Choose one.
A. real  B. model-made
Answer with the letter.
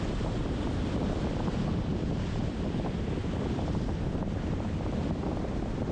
B